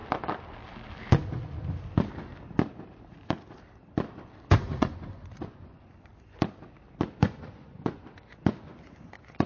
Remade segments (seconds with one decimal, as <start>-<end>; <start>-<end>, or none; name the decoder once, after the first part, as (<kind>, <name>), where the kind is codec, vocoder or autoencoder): 4.5-6.1 (vocoder, Vocos); 7.2-9.5